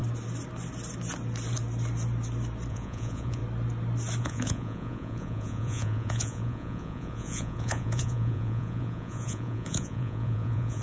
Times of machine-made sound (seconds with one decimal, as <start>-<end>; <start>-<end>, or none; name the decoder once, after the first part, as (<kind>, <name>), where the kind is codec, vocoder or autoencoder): 2.7-3.4 (vocoder, Vocos); 4.2-10.8